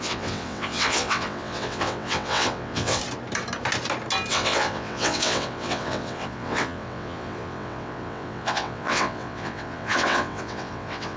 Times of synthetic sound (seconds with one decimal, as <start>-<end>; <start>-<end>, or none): 0.0-3.0; 4.3-11.2